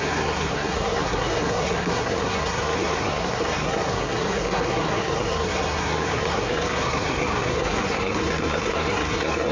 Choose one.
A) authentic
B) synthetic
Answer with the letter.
B